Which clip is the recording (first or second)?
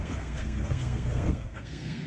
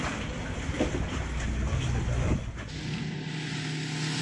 second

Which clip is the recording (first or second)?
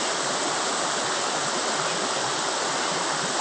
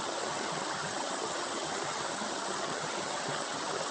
first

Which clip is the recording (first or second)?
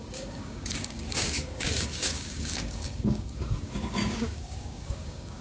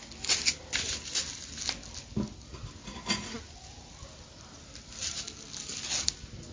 second